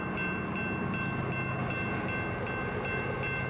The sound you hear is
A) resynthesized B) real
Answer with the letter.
B